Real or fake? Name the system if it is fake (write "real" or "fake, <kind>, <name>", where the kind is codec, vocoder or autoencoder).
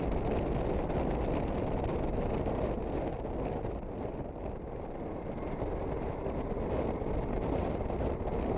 real